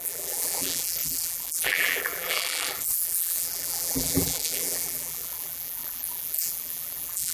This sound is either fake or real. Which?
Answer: fake